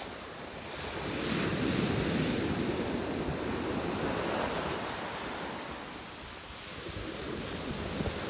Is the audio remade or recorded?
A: recorded